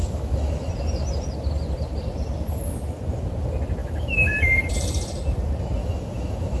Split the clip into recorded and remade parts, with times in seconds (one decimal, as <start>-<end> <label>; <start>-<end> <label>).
0.0-0.7 remade; 0.7-3.8 recorded; 3.8-4.7 remade; 4.7-5.8 recorded; 5.8-6.6 remade